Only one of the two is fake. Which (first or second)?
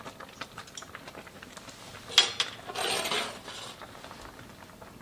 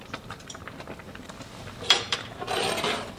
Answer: second